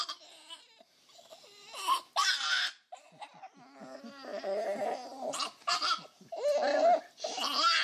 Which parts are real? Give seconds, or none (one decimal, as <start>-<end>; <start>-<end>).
0.0-7.8